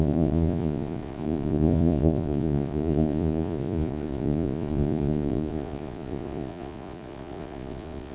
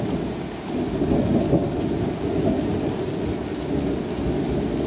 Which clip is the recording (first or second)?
second